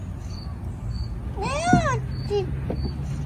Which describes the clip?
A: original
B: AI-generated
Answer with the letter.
A